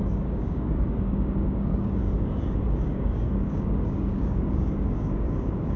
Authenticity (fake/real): fake